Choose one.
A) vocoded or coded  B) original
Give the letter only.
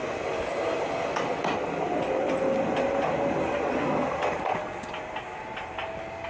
B